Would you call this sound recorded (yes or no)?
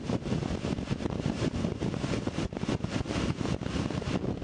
no